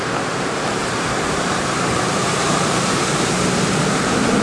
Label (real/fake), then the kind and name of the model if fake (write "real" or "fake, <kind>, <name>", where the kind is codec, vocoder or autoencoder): fake, vocoder, BigVGAN v2